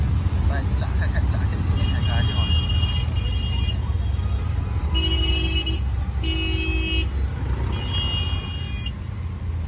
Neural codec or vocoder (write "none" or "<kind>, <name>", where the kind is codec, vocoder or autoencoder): none